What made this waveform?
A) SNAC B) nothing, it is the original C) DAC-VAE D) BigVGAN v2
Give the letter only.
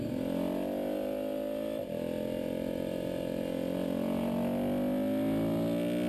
B